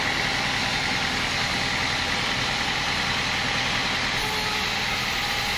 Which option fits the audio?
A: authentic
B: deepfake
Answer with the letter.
A